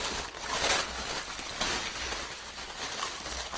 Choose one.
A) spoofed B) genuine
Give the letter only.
B